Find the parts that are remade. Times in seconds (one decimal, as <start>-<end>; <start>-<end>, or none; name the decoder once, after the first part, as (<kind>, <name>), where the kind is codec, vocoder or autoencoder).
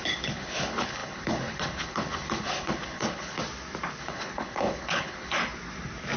0.0-3.4 (codec, HILCodec); 4.0-5.4